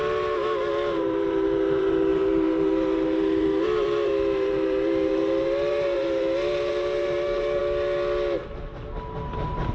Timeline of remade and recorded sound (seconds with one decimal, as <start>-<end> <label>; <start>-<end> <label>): 0.0-7.6 remade; 7.6-9.7 recorded